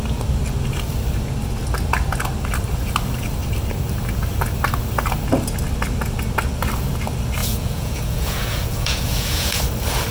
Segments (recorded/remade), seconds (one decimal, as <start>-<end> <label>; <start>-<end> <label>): 0.0-7.4 recorded; 7.4-9.6 remade; 9.6-10.1 recorded